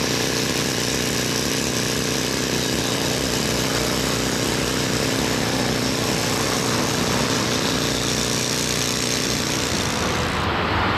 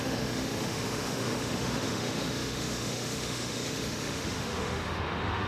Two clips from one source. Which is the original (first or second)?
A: first